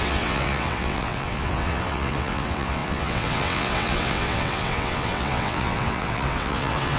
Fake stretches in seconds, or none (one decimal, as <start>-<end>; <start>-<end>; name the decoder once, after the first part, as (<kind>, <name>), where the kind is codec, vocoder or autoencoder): 0.0-7.0 (vocoder, WaveNeXt)